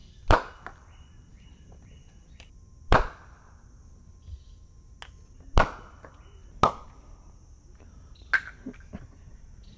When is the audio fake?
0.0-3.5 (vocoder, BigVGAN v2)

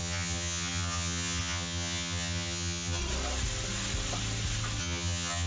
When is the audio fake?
0.0-3.0 (vocoder, HiFi-GAN); 4.8-5.5

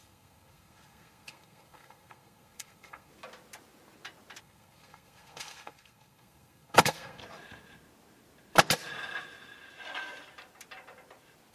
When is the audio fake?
0.0-3.1 (codec, SNAC); 4.4-7.2

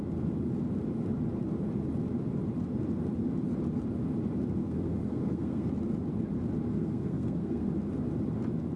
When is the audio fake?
4.6-5.7 (codec, SNAC); 6.7-7.7

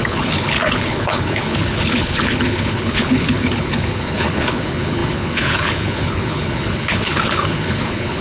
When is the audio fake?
0.0-8.2 (codec, HILCodec)

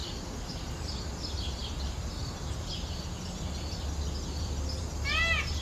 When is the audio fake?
none

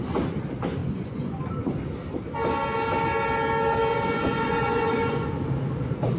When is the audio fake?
0.8-1.4 (vocoder, Vocos); 3.9-5.3

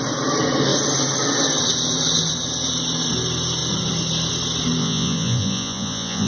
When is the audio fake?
4.8-6.3 (vocoder, Vocos)